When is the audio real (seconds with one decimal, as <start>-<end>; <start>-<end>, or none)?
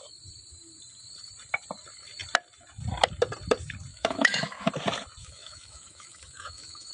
0.0-3.9; 4.7-5.2